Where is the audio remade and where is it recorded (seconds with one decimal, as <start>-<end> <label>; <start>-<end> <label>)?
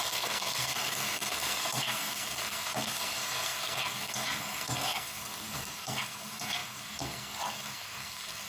0.0-8.5 remade